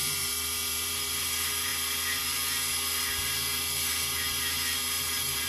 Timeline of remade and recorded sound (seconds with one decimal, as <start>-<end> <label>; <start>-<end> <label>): 0.0-1.7 remade; 1.7-5.0 recorded; 5.0-5.5 remade